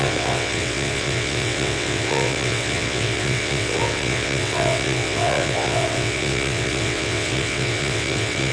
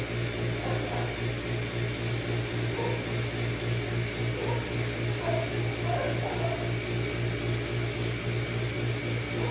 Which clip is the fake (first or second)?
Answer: first